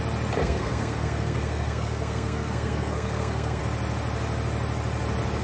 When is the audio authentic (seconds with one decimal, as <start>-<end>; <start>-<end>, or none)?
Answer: 0.0-0.4; 3.6-5.4